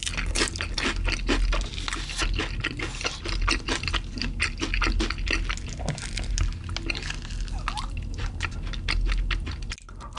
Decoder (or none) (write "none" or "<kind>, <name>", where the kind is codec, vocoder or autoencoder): none